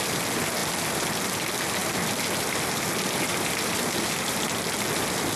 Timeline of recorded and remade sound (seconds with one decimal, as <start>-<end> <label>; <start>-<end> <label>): 0.0-0.6 recorded; 0.6-1.2 remade; 1.2-1.8 recorded; 1.8-4.6 remade; 4.6-5.4 recorded